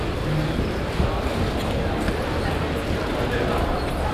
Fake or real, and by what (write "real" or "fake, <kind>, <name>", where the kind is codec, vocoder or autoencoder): real